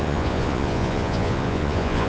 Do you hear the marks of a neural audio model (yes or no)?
yes